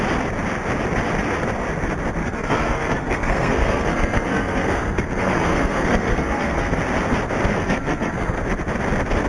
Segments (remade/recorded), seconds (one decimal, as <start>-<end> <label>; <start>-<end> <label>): 0.0-2.2 recorded; 2.2-6.8 remade; 6.8-7.5 recorded; 7.5-8.4 remade; 8.4-9.3 recorded